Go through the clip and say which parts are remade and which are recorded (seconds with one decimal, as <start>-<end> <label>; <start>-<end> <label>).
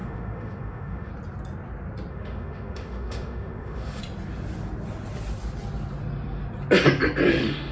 0.0-1.1 remade; 1.1-2.1 recorded; 2.1-4.0 remade; 4.0-7.3 recorded; 7.3-7.7 remade